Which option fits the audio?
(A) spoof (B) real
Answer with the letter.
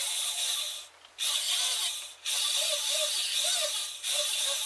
B